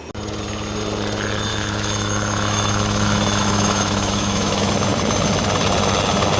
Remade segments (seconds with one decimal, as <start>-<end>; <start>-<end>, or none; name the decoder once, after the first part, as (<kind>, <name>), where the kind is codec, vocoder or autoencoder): 1.5-4.7 (autoencoder, DAC-VAE)